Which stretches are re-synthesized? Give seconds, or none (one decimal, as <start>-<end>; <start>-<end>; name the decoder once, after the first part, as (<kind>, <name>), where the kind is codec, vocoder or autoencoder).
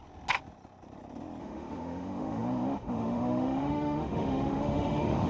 1.4-5.3 (autoencoder, DAC-VAE)